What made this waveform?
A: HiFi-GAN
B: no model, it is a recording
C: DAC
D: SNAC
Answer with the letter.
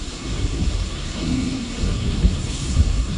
D